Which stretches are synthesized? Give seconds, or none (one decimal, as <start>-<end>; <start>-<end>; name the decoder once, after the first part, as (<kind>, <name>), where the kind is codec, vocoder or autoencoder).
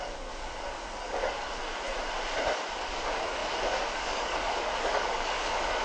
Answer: 0.0-1.6 (codec, DAC); 2.7-5.8